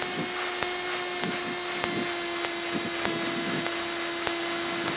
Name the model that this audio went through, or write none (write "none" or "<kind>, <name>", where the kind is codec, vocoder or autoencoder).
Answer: none